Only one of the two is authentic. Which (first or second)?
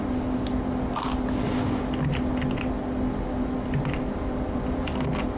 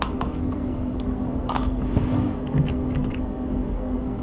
first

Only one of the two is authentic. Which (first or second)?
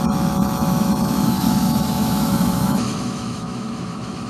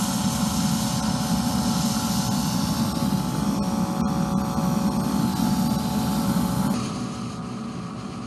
second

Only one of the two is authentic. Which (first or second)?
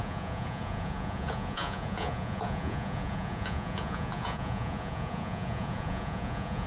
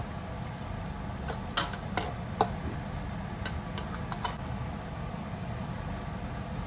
second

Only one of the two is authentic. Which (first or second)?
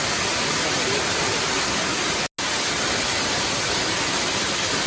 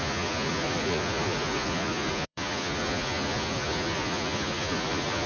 first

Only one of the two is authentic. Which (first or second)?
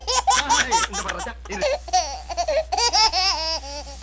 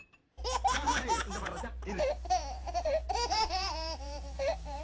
first